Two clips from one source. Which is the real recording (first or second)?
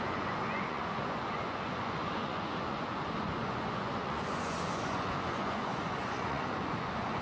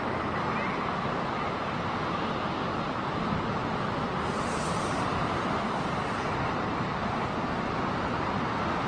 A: second